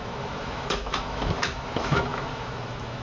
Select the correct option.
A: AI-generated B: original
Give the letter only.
A